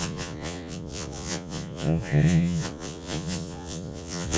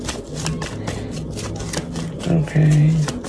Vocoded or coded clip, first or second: first